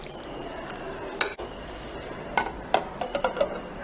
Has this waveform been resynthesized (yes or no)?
yes